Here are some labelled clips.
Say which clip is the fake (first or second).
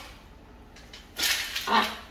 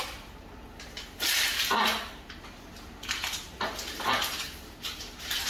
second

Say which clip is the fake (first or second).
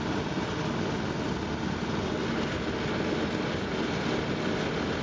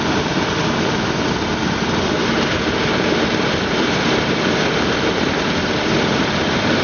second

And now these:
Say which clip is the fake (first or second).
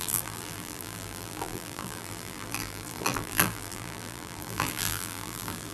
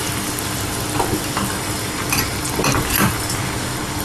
first